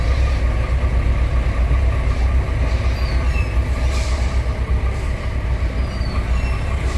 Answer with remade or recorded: recorded